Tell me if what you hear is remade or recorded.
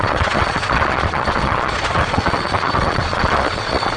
remade